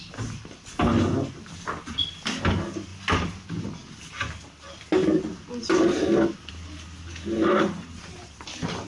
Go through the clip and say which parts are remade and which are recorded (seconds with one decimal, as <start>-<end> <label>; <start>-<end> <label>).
0.0-8.9 recorded